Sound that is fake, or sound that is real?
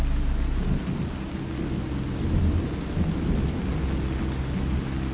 real